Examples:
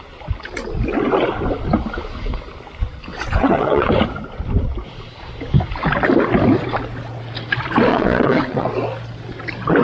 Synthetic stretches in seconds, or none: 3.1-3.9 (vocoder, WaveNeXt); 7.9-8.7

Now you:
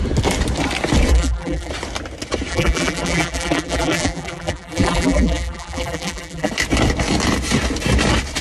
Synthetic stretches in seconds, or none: 1.1-1.7 (vocoder, BigVGAN v2); 2.5-6.5

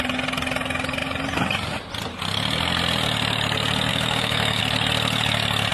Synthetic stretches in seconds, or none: 3.9-4.6 (autoencoder, DAC-VAE)

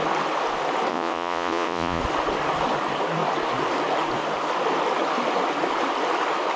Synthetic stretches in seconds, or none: 0.9-2.0 (vocoder, Vocos)

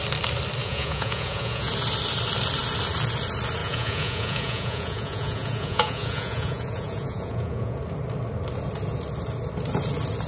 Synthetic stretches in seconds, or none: 0.6-1.7 (vocoder, Vocos); 3.6-7.8

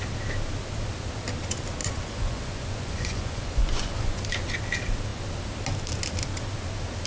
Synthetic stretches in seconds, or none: 1.8-4.2 (vocoder, Vocos)

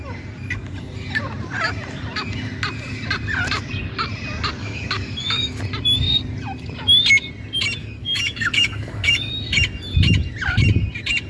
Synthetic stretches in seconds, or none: 4.6-5.6 (codec, DAC); 7.8-9.3

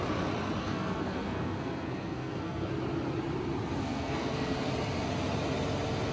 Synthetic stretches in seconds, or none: 0.6-2.7 (codec, SNAC); 3.8-4.7